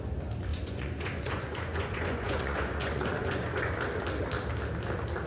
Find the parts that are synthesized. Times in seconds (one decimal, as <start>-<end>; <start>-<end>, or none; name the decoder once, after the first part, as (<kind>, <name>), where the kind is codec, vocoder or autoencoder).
0.5-3.7 (vocoder, Vocos)